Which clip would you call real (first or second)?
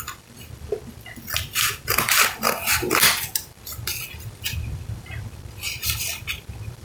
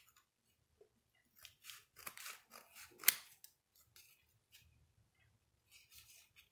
second